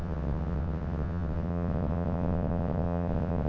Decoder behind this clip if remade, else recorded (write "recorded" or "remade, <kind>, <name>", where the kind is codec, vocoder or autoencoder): remade, vocoder, WaveNeXt